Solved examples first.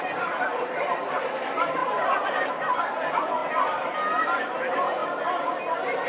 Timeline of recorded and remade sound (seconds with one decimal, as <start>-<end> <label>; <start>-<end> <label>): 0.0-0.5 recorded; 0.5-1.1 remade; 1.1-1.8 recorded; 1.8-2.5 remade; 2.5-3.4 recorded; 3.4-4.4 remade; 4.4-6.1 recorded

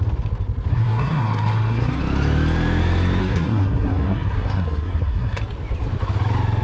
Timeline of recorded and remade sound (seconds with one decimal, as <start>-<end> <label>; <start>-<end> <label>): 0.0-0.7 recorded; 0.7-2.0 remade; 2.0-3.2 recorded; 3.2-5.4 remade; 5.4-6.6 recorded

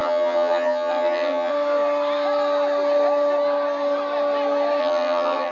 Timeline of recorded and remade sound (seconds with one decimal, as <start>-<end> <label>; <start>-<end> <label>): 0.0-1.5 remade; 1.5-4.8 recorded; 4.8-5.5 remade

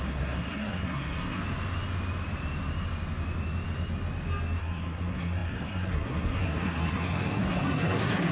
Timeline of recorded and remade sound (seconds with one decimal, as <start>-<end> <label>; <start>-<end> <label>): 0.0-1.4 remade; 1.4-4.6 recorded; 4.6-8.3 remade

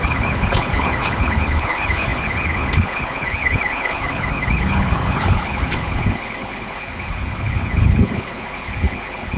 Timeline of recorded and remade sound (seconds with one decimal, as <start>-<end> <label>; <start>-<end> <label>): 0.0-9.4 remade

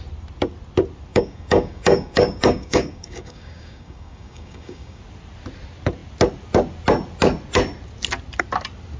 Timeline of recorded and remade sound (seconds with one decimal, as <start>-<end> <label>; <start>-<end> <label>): 0.0-1.1 recorded; 1.1-5.0 remade; 5.0-9.0 recorded